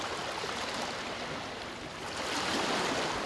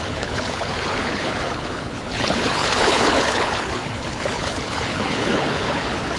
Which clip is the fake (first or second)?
second